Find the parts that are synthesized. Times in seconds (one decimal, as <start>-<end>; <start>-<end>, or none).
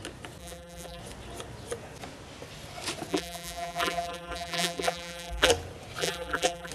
0.4-1.0; 3.1-5.5; 6.0-6.7